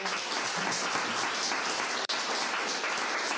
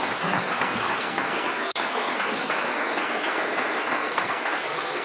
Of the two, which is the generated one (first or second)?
second